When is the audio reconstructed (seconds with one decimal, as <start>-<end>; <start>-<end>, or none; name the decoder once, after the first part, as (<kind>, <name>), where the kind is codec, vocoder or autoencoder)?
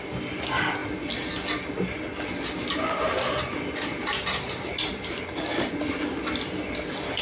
3.9-5.7 (vocoder, BigVGAN v2)